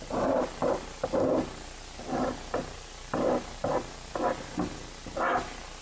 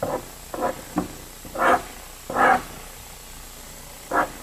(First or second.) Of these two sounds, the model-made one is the second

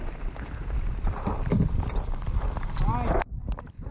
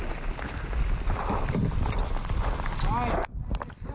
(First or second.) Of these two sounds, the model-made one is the first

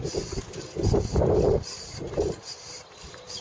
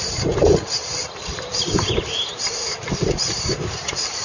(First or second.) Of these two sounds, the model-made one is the second